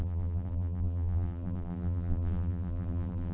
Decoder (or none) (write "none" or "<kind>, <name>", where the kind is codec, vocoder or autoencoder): vocoder, BigVGAN v2